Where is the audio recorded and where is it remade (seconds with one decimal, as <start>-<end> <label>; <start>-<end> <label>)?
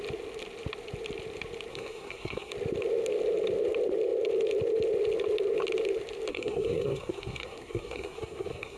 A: 0.0-1.7 recorded; 1.7-2.5 remade; 2.5-6.3 recorded; 6.3-8.8 remade